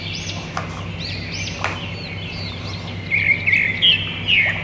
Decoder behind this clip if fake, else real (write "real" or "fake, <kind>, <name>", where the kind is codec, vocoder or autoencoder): real